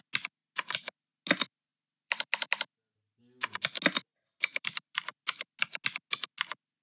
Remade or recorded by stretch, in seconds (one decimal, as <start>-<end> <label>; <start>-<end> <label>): 0.0-0.4 recorded; 0.4-1.1 remade; 1.1-1.7 recorded; 1.7-3.2 remade; 3.2-4.1 recorded; 4.1-5.2 remade; 5.2-6.8 recorded